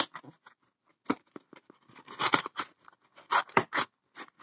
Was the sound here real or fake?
real